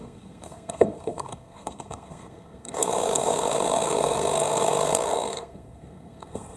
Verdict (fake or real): fake